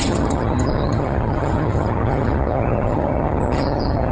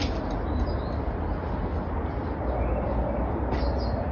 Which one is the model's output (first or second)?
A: first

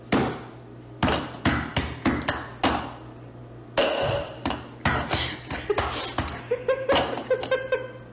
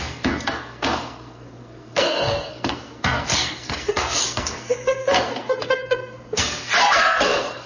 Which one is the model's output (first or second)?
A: second